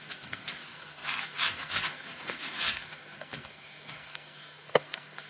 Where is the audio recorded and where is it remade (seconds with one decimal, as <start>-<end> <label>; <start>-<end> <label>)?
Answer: 0.0-5.3 remade